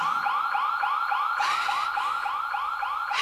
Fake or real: real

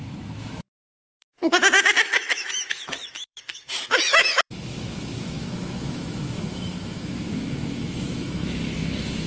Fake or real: fake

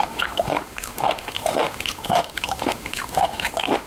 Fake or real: fake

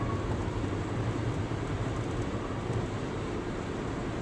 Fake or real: real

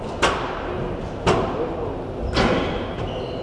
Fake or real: real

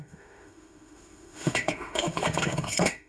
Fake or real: fake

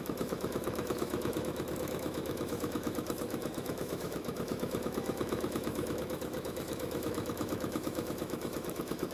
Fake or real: fake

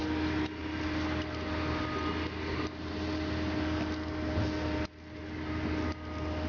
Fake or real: real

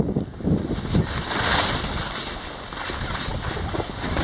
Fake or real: real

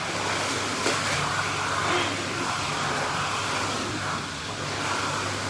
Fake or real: real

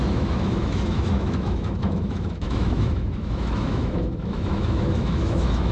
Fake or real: fake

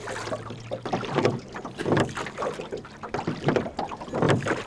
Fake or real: real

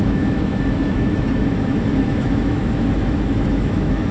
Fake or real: fake